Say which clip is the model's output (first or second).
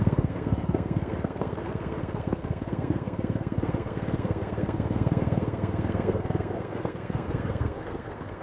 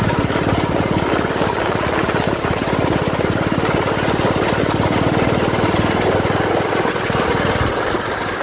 first